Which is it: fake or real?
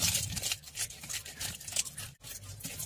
real